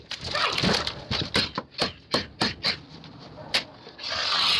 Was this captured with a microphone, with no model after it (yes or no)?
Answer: yes